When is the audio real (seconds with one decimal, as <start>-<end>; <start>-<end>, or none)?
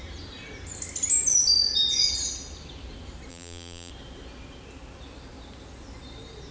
0.0-3.3; 3.9-6.5